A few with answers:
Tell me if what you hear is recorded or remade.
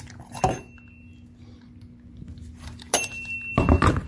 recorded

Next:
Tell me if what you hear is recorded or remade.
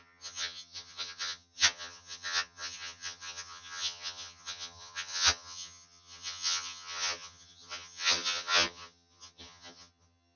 remade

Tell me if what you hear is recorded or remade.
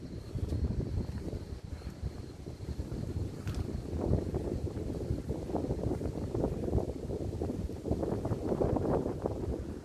recorded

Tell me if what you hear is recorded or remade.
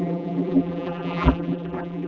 remade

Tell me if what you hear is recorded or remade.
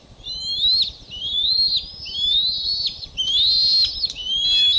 recorded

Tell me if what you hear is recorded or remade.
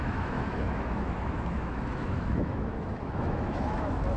remade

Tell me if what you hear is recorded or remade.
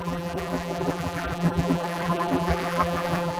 remade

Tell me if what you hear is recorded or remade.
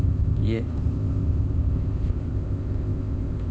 remade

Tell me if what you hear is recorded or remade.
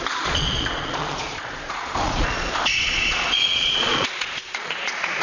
remade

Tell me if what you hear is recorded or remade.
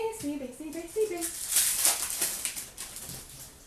recorded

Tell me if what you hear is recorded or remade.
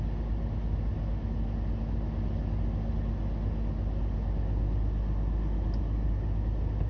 recorded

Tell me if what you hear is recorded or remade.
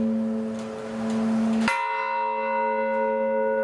recorded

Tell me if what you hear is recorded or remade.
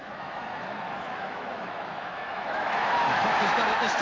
remade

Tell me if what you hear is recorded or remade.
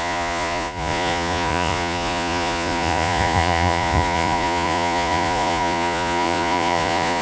remade